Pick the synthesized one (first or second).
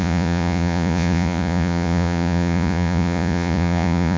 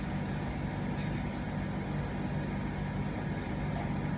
first